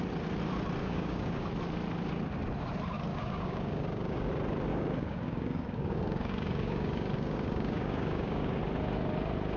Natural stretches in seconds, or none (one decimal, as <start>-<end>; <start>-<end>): 0.0-0.8; 1.5-3.1; 4.3-4.7; 8.6-9.6